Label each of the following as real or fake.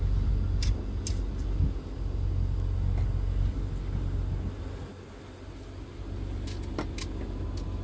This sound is real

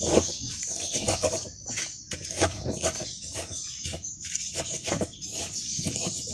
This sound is fake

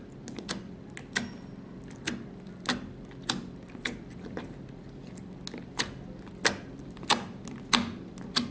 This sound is real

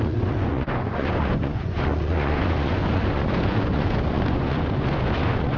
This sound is fake